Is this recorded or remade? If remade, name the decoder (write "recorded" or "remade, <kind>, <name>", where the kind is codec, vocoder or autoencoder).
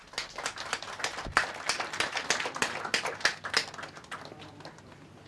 recorded